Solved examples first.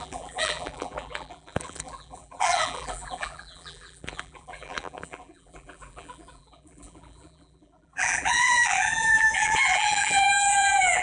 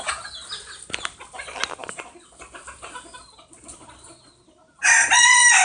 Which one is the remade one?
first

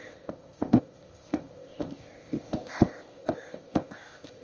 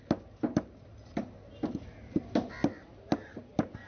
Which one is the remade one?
first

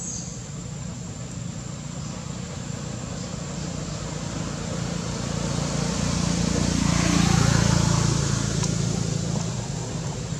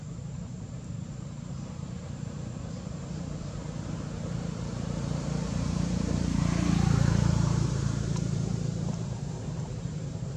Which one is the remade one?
second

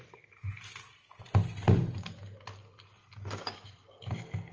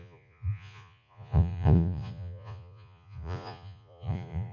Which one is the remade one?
second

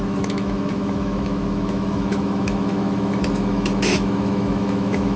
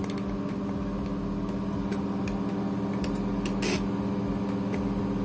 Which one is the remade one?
first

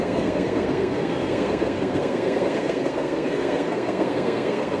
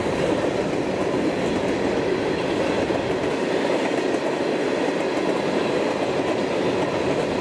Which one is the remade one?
first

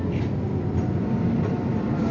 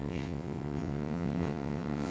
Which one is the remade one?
second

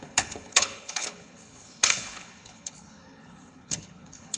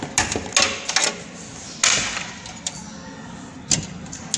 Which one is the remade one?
first